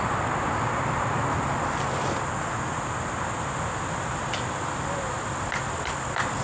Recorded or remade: recorded